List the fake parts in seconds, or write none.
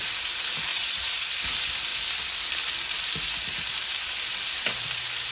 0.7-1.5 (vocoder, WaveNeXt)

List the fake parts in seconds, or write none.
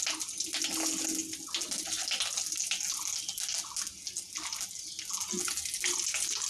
none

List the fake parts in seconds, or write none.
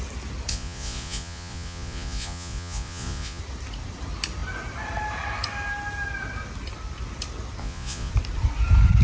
0.5-3.4 (vocoder, Vocos); 7.6-8.1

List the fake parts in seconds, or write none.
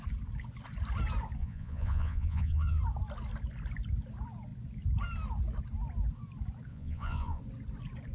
1.4-2.8 (vocoder, Vocos); 6.7-7.4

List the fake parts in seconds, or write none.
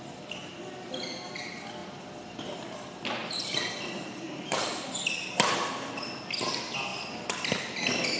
1.8-2.5 (vocoder, BigVGAN v2); 3.2-5.3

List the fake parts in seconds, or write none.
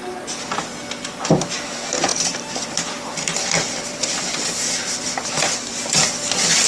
2.1-6.1 (vocoder, BigVGAN v2)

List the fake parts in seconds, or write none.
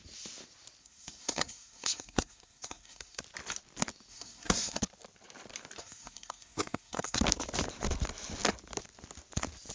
0.8-3.2 (codec, SNAC); 4.1-4.8; 5.8-7.2